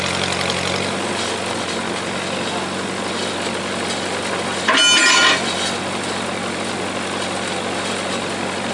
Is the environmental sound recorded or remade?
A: recorded